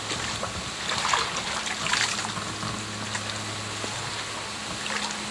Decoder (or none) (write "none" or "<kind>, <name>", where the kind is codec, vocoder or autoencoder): none